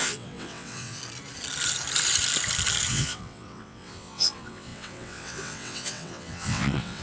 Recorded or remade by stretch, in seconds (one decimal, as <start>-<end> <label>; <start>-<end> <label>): 0.0-1.0 remade; 1.0-2.9 recorded; 2.9-7.0 remade